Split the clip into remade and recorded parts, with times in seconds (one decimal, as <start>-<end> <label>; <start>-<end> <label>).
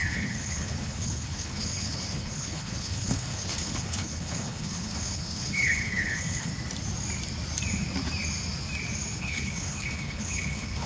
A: 0.0-6.5 remade; 6.5-9.2 recorded; 9.2-10.9 remade